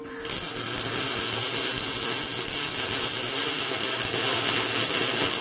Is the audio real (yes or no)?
yes